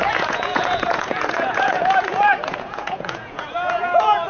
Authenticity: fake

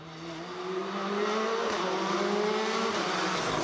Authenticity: real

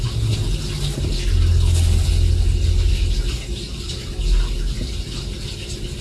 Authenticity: real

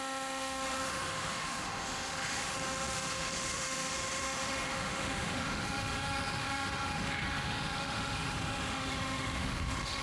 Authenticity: fake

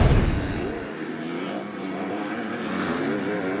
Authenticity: real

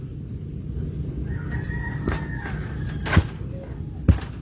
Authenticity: real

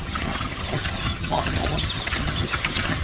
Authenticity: fake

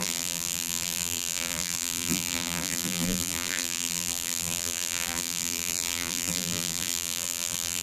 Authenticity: fake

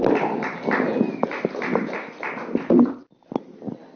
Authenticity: real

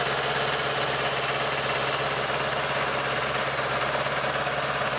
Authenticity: real